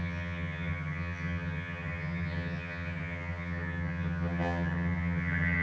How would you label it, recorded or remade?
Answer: remade